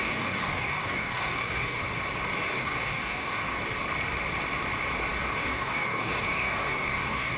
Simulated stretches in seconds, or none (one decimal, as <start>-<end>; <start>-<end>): 0.0-1.8; 2.5-3.6; 5.2-7.4